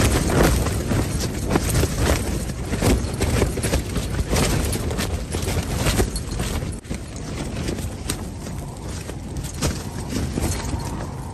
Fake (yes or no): no